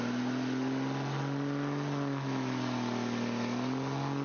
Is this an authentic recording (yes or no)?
yes